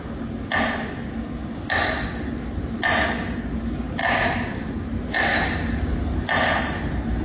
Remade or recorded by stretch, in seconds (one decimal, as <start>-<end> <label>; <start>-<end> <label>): 0.0-4.0 recorded; 4.0-4.7 remade; 4.7-7.2 recorded